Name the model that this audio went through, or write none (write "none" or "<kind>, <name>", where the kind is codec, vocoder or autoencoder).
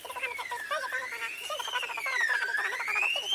none